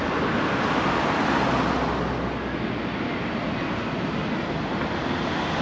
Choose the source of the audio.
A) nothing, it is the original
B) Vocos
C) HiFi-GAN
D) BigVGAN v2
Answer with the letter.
A